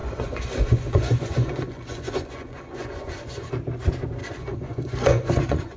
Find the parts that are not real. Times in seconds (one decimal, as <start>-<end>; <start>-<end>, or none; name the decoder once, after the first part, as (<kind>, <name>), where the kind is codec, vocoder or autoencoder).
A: 0.0-3.5 (vocoder, Vocos); 4.2-5.8